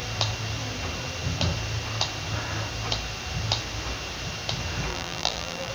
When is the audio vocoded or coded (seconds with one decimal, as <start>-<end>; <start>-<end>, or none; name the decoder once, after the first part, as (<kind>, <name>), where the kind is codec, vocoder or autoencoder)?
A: 4.9-5.7 (vocoder, BigVGAN v2)